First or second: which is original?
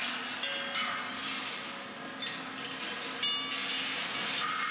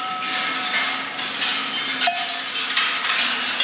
first